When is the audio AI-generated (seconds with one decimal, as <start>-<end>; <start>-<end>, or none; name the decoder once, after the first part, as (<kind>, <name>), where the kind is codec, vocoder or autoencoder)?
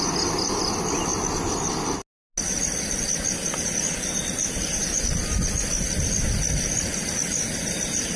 none